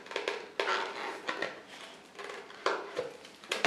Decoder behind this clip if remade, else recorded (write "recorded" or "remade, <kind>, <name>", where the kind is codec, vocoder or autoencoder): recorded